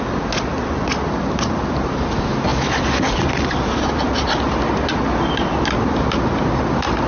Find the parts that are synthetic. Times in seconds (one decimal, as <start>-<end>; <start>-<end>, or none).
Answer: none